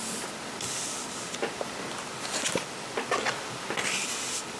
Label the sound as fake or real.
real